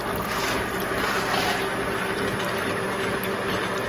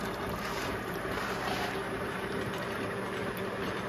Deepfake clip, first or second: second